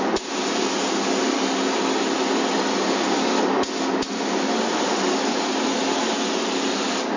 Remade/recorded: recorded